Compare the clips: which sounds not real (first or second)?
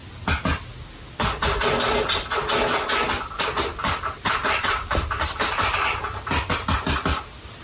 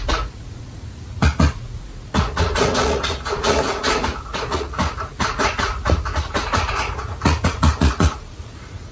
second